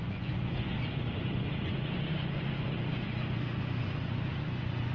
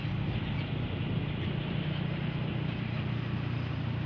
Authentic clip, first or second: second